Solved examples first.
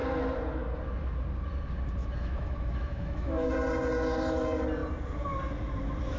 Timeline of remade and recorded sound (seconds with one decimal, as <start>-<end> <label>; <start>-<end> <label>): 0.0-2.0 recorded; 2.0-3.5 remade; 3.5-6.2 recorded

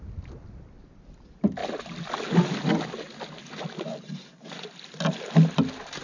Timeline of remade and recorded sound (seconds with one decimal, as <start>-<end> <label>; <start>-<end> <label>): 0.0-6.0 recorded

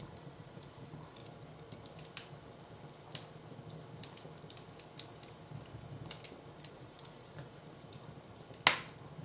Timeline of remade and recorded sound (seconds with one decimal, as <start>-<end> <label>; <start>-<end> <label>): 0.0-1.2 remade; 1.2-6.5 recorded; 6.5-7.6 remade; 7.6-9.2 recorded

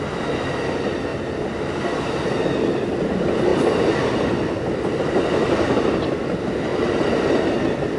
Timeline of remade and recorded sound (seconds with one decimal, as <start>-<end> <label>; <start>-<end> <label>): 0.0-8.0 recorded